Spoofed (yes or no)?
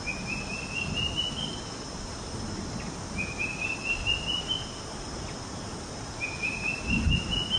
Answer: no